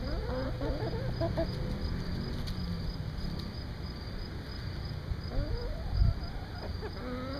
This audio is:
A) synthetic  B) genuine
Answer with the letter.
B